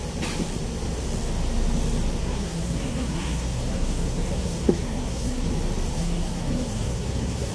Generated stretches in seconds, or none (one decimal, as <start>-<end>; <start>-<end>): 2.2-5.5; 5.9-7.5